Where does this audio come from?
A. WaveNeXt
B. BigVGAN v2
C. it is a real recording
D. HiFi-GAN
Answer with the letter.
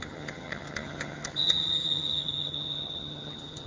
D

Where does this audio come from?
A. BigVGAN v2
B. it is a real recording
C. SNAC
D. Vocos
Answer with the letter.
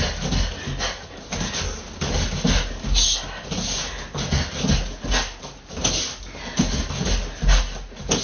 B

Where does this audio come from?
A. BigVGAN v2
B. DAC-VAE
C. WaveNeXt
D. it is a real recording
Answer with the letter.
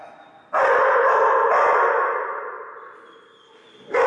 D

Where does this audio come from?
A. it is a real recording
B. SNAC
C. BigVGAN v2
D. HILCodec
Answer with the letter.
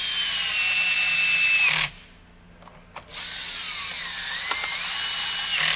A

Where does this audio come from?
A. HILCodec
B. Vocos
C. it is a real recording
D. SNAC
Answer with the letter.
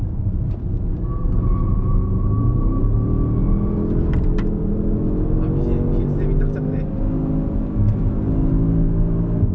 C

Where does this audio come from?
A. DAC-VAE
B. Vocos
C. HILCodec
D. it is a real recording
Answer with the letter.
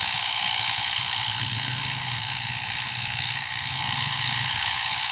C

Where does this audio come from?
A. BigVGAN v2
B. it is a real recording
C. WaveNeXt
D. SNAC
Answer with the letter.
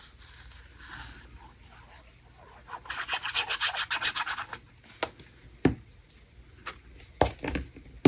B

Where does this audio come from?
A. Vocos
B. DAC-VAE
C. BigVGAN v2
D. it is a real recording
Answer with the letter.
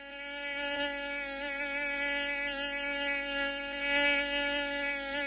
D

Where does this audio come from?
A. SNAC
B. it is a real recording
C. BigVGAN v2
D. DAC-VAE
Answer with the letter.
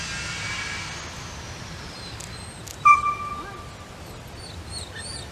B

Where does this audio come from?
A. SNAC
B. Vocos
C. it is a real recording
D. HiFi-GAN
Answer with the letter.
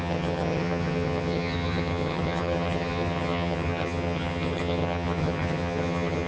D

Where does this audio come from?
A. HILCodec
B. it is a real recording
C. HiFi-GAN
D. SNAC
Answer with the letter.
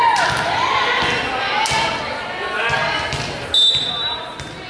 B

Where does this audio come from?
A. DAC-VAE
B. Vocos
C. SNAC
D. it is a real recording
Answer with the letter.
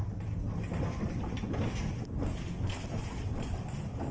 D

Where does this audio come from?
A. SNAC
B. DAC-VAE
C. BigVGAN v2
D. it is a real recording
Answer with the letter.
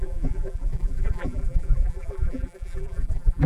C